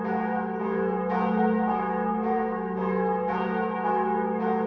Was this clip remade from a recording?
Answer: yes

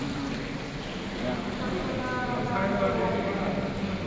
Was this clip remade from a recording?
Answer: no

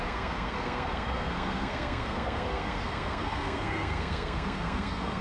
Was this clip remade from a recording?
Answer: yes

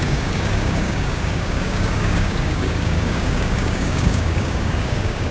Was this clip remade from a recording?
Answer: yes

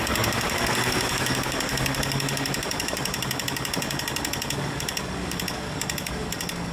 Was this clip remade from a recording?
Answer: yes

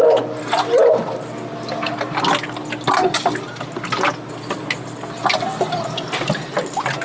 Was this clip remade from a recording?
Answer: no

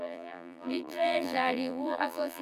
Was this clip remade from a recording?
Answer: yes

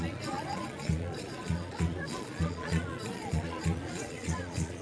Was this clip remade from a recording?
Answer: yes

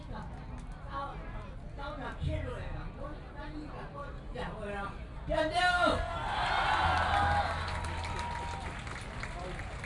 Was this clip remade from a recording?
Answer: no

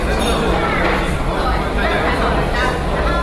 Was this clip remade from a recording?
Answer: no